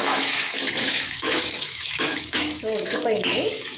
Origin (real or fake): fake